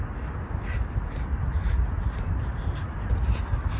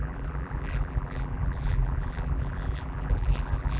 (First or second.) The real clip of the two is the first